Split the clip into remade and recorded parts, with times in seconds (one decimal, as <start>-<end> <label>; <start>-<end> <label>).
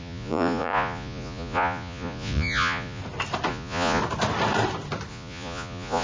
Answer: 0.0-3.0 remade; 3.0-3.5 recorded; 3.5-4.0 remade; 4.0-5.1 recorded; 5.1-6.0 remade